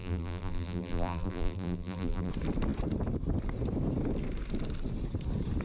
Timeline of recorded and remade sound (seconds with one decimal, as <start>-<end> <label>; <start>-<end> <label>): 0.0-2.3 remade; 2.3-5.6 recorded